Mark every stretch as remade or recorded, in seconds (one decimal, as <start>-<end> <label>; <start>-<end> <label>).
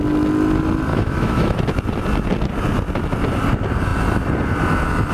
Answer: 0.0-0.9 recorded; 0.9-1.6 remade; 1.6-5.1 recorded